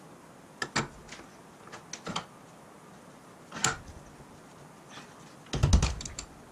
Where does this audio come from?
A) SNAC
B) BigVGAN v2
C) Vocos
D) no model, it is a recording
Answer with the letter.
D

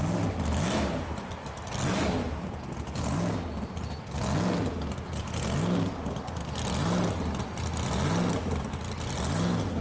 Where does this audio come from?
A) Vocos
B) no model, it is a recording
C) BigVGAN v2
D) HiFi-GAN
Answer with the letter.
B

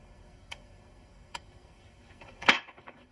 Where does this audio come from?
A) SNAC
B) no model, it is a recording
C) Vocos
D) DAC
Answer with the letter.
A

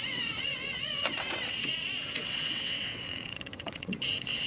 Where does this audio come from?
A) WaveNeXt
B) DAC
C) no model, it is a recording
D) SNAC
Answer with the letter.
A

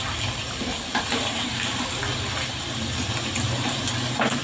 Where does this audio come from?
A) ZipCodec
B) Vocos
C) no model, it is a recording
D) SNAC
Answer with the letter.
C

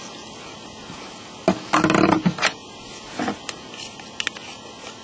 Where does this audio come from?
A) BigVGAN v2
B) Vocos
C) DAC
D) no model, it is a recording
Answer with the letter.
D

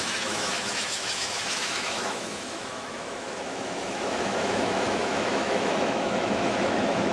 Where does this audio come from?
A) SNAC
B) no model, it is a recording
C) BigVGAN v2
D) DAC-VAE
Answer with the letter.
D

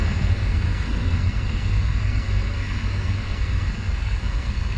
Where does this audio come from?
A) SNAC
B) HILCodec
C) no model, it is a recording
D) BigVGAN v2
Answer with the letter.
A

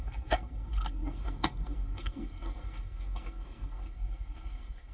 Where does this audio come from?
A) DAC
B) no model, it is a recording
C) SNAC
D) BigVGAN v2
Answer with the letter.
C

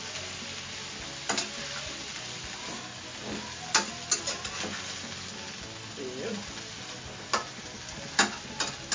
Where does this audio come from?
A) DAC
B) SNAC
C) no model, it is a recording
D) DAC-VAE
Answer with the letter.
C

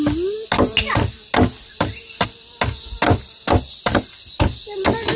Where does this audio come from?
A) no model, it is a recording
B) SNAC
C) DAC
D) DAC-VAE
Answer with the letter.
A